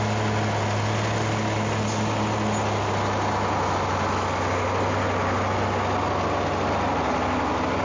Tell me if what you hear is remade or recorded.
recorded